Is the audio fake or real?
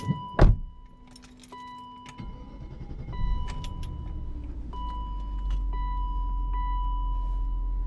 real